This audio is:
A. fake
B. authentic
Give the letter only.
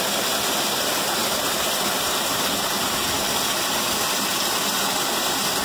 B